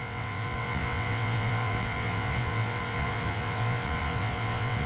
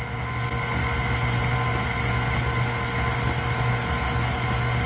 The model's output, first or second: first